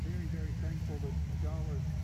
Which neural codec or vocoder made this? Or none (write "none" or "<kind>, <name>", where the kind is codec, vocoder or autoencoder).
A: none